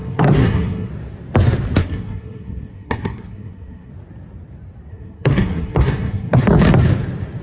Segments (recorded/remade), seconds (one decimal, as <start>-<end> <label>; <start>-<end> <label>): 0.0-0.9 remade; 0.9-1.8 recorded; 1.8-3.9 remade; 3.9-4.9 recorded; 4.9-6.4 remade; 6.4-7.4 recorded